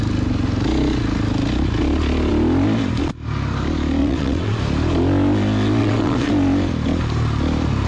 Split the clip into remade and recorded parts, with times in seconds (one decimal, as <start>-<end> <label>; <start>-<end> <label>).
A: 0.0-4.0 recorded; 4.0-4.6 remade; 4.6-5.8 recorded; 5.8-6.3 remade; 6.3-7.9 recorded